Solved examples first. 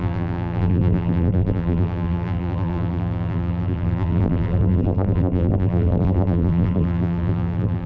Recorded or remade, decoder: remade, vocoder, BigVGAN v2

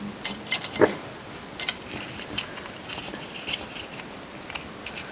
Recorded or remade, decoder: recorded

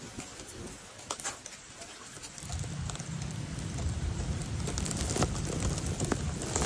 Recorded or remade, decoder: remade, vocoder, BigVGAN v2